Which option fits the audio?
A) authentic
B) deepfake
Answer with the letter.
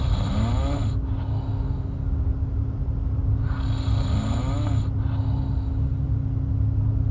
A